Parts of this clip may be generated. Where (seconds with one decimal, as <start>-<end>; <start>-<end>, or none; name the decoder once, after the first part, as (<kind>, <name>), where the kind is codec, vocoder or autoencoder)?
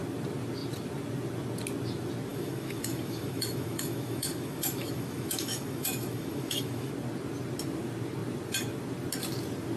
2.3-6.9 (autoencoder, DAC-VAE)